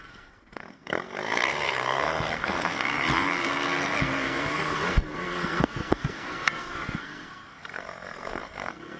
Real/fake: fake